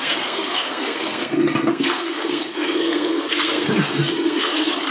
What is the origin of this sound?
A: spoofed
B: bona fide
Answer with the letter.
A